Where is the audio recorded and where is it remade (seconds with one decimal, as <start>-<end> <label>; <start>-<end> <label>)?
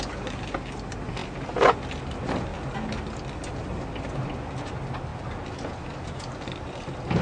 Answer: 0.0-7.2 recorded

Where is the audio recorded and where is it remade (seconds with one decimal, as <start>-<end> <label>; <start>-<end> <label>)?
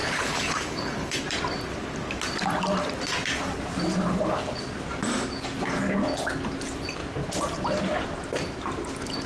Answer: 0.0-1.2 remade; 1.2-9.3 recorded